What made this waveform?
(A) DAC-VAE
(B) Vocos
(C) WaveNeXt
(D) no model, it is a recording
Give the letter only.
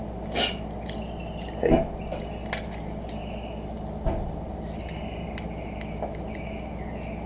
D